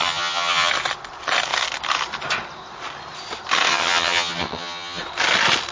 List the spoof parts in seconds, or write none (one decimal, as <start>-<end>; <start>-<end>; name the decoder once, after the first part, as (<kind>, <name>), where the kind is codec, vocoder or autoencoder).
0.0-0.7 (vocoder, HiFi-GAN); 3.7-5.0